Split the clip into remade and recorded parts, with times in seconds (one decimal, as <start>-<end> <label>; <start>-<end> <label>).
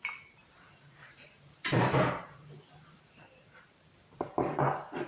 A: 0.0-5.1 remade